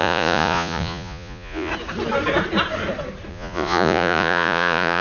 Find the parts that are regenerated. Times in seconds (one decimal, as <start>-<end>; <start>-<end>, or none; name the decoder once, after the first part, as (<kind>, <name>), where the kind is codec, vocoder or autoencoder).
0.0-1.7 (vocoder, Vocos); 3.3-5.0